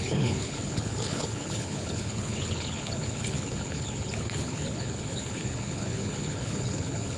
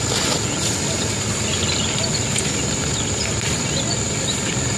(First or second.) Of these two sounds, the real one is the second